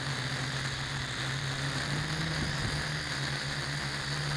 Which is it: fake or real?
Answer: real